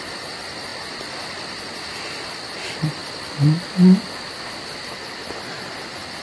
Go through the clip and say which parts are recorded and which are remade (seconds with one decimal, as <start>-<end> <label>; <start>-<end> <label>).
0.0-6.2 recorded